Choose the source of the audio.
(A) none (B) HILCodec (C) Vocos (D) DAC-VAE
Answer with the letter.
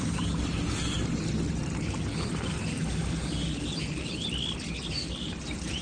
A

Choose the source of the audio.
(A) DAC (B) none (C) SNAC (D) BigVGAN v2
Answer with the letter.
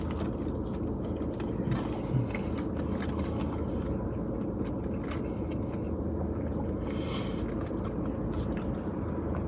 B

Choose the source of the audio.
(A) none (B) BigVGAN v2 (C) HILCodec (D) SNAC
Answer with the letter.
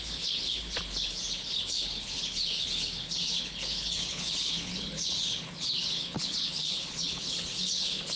C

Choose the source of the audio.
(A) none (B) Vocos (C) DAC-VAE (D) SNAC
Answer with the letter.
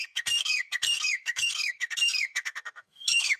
D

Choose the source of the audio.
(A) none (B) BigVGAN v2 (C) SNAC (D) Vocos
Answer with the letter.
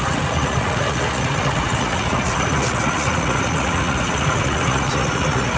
D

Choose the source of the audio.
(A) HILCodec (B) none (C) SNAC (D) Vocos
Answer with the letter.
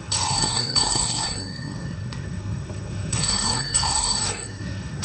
C